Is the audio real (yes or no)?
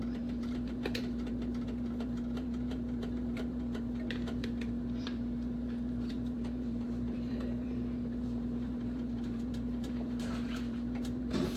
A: no